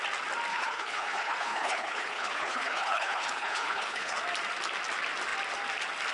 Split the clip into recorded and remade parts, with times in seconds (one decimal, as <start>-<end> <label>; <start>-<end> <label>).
0.0-0.5 recorded; 0.5-4.2 remade; 4.2-6.1 recorded